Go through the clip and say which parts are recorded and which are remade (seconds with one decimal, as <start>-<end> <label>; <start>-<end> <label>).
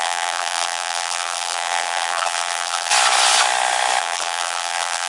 0.0-2.9 remade; 2.9-4.0 recorded; 4.0-5.1 remade